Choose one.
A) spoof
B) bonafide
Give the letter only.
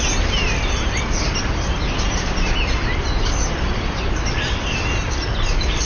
B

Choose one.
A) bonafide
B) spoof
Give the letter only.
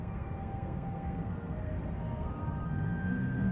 B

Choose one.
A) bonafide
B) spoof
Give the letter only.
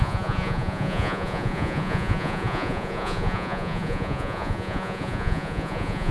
B